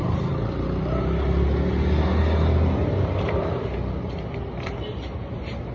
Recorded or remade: recorded